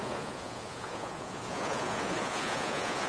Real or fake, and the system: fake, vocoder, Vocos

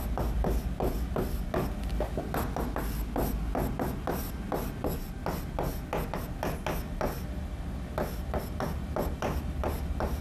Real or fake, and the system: real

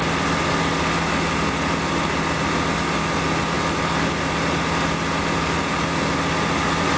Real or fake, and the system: real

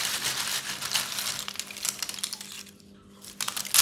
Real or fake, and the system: real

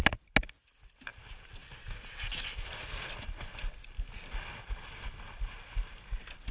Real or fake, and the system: real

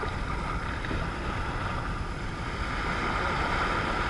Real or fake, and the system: real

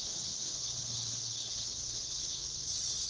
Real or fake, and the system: fake, codec, HILCodec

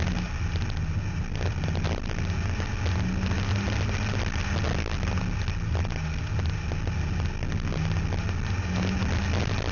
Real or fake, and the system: real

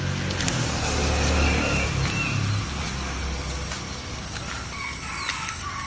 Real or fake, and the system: real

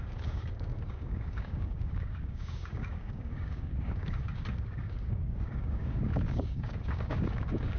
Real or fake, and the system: fake, codec, DAC